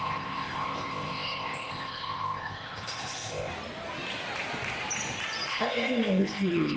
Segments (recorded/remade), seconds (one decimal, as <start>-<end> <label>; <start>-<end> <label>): 0.0-3.5 remade; 3.5-5.5 recorded; 5.5-6.8 remade